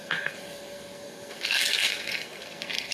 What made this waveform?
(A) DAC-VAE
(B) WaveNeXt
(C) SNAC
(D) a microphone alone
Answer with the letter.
C